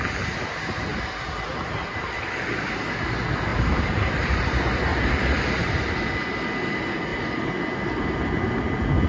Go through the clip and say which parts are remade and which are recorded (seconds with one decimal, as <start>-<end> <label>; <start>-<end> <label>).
0.0-3.5 recorded; 3.5-4.4 remade; 4.4-4.9 recorded; 4.9-5.8 remade; 5.8-9.1 recorded